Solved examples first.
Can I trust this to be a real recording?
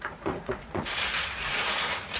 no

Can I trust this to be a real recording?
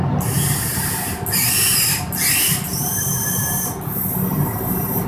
yes